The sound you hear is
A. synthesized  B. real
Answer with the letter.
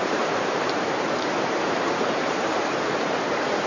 A